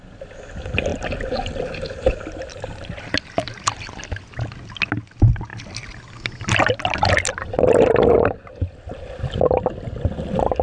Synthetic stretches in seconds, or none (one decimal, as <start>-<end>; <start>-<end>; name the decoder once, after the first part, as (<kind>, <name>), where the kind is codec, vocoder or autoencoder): none